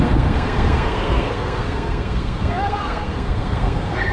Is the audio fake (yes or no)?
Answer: yes